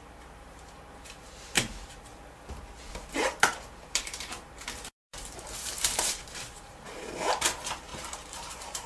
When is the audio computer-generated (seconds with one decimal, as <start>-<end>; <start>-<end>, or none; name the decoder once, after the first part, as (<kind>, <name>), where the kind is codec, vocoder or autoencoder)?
0.0-2.1 (vocoder, BigVGAN v2); 3.3-8.9